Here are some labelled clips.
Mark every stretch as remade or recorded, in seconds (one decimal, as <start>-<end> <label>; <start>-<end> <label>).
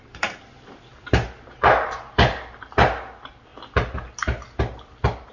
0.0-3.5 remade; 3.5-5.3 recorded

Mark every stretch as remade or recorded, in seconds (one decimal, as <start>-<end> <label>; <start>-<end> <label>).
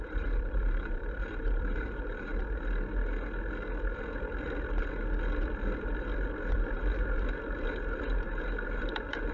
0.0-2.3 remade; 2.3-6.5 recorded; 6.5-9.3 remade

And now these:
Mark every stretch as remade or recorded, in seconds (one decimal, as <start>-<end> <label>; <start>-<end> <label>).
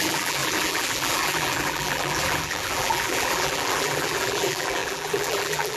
0.0-5.8 remade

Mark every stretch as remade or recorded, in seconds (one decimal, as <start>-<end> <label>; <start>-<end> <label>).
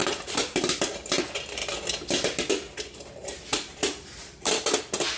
0.0-1.2 remade; 1.2-3.2 recorded; 3.2-4.6 remade; 4.6-5.2 recorded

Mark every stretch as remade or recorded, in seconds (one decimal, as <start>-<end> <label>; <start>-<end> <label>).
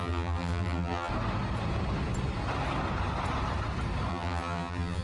0.0-1.1 remade; 1.1-4.1 recorded; 4.1-5.0 remade